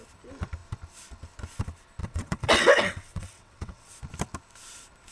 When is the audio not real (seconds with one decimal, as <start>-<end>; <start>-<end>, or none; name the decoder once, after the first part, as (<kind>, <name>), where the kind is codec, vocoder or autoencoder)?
2.0-4.0 (vocoder, WaveNeXt)